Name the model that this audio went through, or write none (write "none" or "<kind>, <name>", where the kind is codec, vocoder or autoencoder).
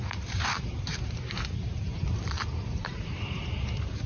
vocoder, BigVGAN v2